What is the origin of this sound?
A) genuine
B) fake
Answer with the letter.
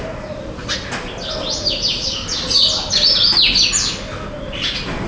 A